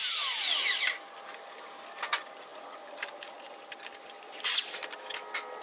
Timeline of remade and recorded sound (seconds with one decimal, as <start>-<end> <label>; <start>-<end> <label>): 0.0-5.6 recorded